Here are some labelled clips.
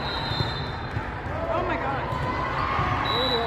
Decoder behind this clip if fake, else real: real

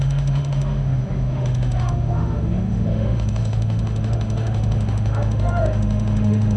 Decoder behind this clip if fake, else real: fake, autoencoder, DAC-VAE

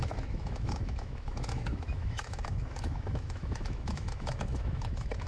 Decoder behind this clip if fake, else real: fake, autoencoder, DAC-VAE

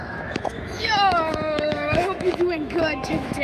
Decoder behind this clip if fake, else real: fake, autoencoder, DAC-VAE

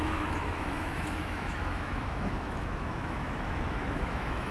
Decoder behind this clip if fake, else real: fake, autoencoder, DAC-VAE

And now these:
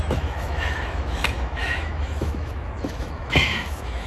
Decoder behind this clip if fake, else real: fake, autoencoder, DAC-VAE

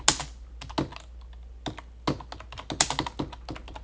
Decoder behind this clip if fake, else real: real